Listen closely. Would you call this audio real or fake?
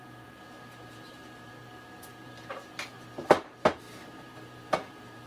fake